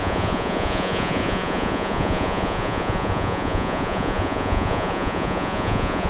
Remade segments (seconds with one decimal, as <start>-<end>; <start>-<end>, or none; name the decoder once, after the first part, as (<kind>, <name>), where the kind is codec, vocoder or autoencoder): 0.0-6.1 (vocoder, Vocos)